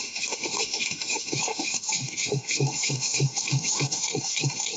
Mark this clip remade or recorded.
remade